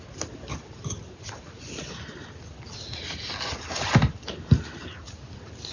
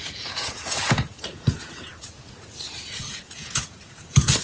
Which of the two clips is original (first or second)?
first